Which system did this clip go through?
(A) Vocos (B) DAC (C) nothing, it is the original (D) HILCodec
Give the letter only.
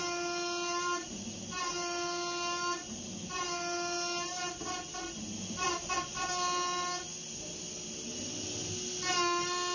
C